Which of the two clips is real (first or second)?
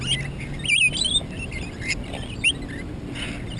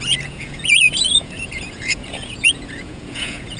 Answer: first